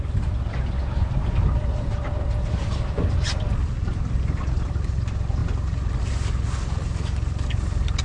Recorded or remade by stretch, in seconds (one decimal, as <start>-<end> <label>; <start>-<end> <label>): 0.0-8.0 recorded